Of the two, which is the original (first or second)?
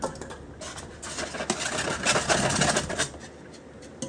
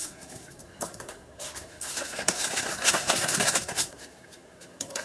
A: first